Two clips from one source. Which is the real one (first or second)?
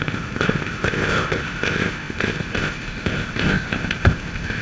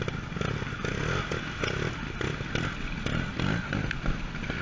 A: second